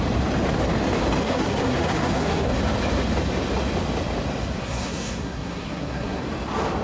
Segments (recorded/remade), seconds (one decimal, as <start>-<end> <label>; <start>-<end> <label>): 0.0-1.2 recorded; 1.2-2.6 remade; 2.6-4.6 recorded; 4.6-6.2 remade; 6.2-6.8 recorded